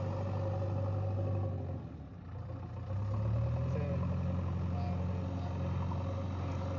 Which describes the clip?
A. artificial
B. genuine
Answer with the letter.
B